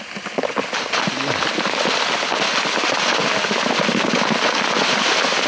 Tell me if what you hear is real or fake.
real